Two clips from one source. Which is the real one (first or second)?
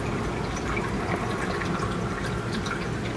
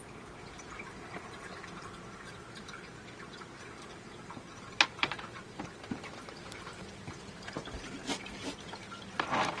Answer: first